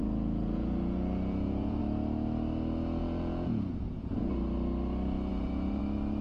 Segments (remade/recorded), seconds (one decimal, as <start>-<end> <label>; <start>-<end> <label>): 0.0-1.8 remade; 1.8-3.0 recorded; 3.0-4.3 remade; 4.3-5.3 recorded; 5.3-5.8 remade; 5.8-6.2 recorded